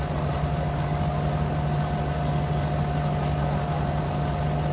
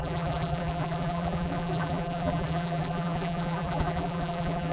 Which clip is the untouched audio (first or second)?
first